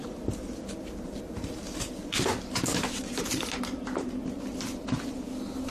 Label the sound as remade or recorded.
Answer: recorded